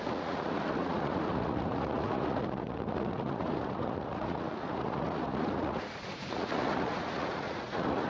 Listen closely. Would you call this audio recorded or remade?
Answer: remade